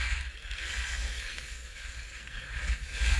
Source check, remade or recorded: remade